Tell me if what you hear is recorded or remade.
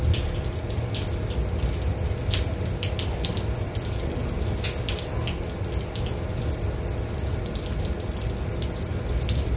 recorded